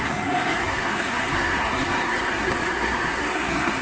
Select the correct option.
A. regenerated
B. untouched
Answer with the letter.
A